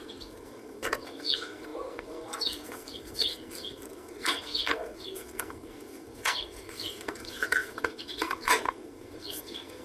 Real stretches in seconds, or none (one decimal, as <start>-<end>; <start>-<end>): none